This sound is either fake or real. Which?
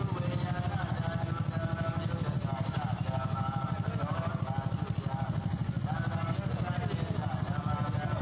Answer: real